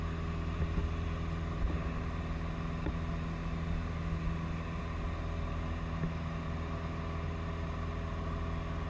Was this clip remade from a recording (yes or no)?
no